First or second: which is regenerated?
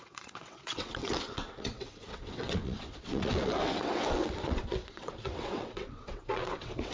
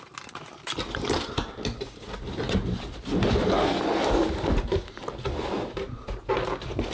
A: first